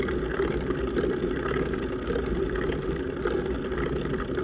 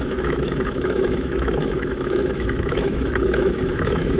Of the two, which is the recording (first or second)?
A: first